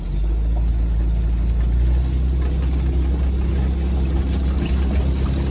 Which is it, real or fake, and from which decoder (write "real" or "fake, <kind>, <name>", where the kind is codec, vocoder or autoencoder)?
real